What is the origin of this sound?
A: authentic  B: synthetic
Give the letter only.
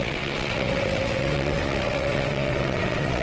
B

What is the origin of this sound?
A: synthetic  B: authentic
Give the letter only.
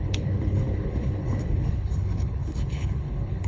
A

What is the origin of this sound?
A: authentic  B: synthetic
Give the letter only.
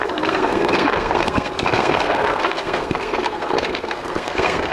B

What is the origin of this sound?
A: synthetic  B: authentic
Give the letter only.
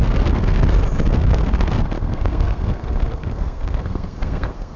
A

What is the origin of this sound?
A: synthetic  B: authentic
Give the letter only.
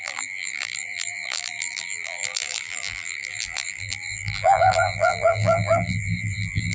A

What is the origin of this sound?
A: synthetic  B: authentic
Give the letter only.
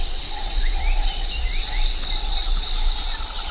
B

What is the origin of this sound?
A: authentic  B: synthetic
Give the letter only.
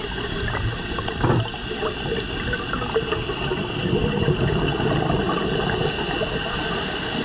A